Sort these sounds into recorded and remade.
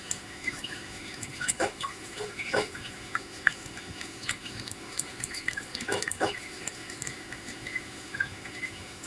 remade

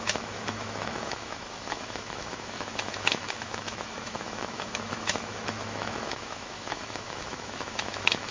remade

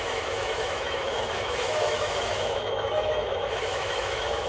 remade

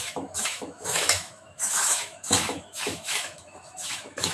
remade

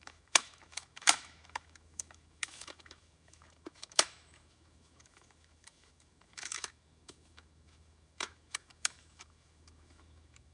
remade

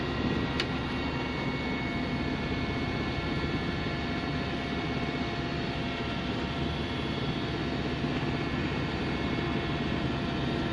recorded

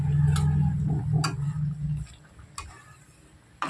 recorded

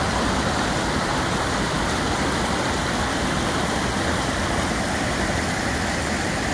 recorded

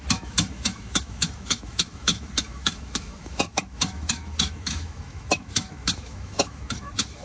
remade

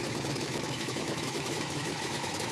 remade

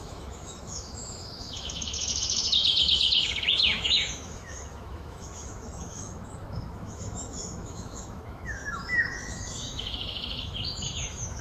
remade